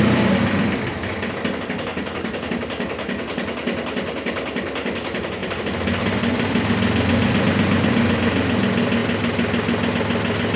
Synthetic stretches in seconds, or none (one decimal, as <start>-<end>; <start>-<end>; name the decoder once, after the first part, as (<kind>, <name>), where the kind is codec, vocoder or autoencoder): 1.9-2.5 (vocoder, BigVGAN v2)